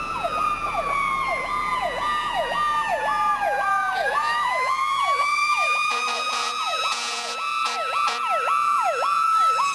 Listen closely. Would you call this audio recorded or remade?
remade